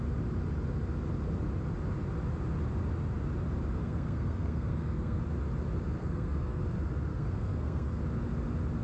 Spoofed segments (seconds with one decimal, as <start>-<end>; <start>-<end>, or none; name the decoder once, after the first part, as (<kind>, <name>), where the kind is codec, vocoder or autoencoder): 3.8-5.2 (codec, SNAC); 6.0-6.6; 7.1-8.0